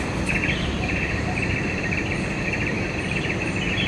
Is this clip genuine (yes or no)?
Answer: no